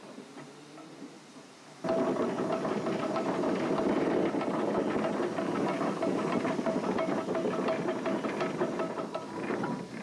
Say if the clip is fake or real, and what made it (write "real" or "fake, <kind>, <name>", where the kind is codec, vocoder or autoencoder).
real